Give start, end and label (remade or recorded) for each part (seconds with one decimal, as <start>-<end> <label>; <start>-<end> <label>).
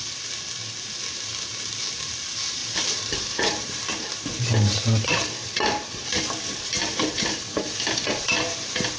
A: 0.0-0.6 remade; 0.6-1.1 recorded; 1.1-9.0 remade